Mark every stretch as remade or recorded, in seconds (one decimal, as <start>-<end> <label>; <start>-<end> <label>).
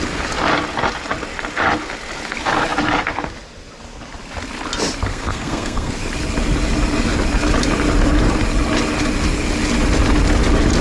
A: 0.0-5.1 recorded; 5.1-5.9 remade; 5.9-10.8 recorded